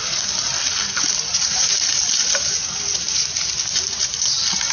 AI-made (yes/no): no